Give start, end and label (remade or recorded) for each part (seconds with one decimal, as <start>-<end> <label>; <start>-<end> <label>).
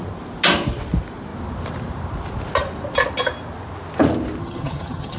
0.0-4.4 recorded; 4.4-5.2 remade